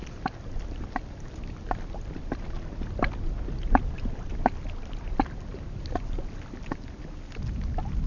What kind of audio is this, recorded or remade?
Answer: recorded